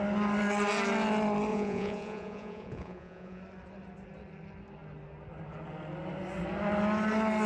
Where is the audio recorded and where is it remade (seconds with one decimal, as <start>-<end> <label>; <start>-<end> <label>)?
0.0-1.5 recorded; 1.5-3.4 remade; 3.4-7.5 recorded